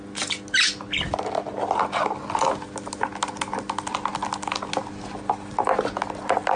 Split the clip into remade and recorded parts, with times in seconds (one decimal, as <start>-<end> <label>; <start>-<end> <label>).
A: 0.0-6.6 recorded